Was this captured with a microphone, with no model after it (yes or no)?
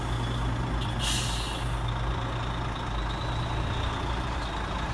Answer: yes